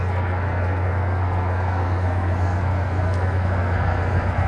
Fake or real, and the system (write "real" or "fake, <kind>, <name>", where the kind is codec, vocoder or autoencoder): fake, codec, SNAC